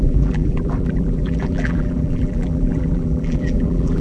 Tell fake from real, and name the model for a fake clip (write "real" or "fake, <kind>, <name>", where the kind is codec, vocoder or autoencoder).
fake, vocoder, BigVGAN v2